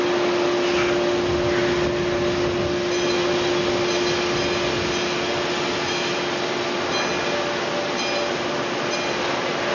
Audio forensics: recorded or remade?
recorded